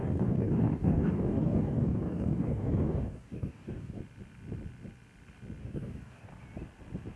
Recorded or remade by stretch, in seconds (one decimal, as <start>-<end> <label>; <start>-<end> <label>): 0.0-4.0 remade; 4.0-5.6 recorded; 5.6-6.3 remade; 6.3-7.2 recorded